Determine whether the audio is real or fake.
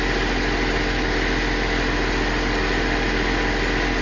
real